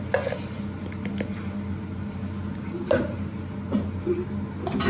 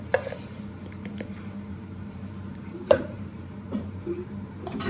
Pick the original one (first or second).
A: first